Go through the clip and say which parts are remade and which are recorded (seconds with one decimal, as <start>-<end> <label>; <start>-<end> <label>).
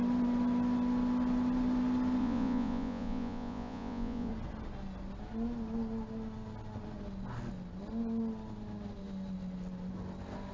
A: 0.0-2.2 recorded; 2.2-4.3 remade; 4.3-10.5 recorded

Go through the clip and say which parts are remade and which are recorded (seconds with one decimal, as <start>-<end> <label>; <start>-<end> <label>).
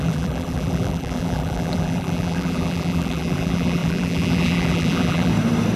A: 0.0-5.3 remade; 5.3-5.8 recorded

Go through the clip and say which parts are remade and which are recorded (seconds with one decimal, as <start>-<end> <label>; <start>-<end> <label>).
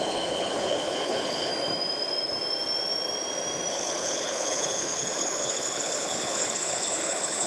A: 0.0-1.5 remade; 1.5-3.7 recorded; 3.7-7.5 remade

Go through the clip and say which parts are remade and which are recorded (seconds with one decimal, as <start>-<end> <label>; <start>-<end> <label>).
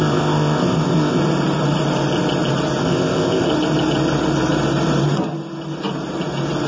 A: 0.0-1.2 remade; 1.2-2.8 recorded; 2.8-3.5 remade; 3.5-6.7 recorded